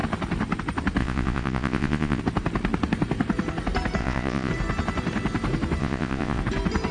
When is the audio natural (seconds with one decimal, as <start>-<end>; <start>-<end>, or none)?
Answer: 0.0-1.0; 2.2-4.0; 4.5-5.8; 6.4-6.9